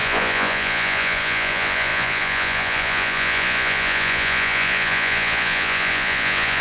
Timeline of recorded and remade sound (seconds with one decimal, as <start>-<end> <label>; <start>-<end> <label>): 0.0-6.6 remade